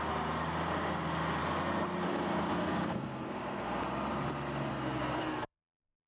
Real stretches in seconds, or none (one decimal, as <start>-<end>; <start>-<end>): 0.0-2.5; 3.8-4.7